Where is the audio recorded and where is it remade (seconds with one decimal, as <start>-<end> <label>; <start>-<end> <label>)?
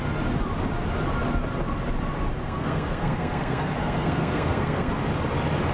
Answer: 0.0-2.4 recorded; 2.4-4.9 remade; 4.9-5.7 recorded